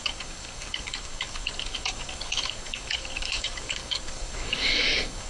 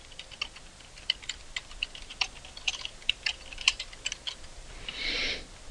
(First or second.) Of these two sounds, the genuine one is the second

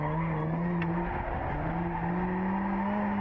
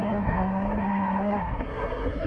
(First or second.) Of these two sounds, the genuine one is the first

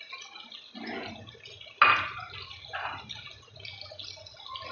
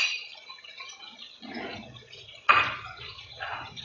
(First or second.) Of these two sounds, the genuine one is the first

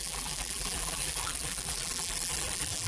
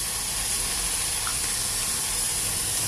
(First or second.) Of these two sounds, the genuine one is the second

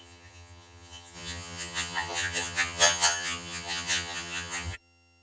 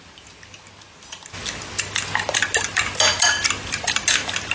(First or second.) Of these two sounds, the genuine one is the second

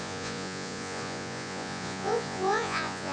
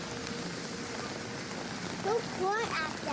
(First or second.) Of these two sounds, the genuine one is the second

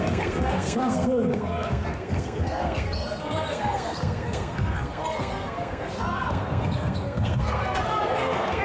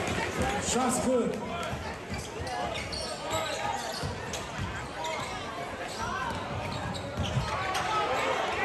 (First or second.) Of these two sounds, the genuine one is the second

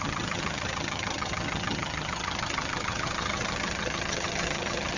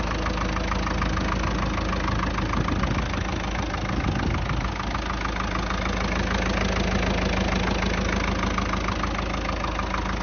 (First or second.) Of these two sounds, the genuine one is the second